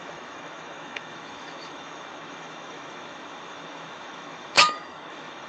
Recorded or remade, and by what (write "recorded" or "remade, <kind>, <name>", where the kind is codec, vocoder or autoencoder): remade, autoencoder, DAC-VAE